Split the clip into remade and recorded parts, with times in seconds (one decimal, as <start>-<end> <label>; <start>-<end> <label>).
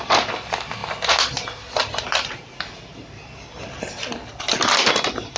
0.0-5.4 recorded